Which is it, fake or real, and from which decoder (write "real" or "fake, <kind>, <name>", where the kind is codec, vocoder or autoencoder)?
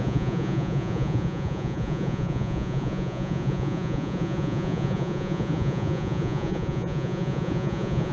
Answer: fake, vocoder, Vocos